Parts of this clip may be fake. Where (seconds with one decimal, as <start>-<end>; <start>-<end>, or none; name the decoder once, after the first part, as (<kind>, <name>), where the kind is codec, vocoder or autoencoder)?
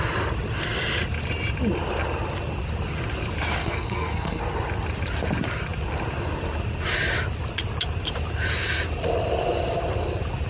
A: 3.6-4.4 (codec, SNAC)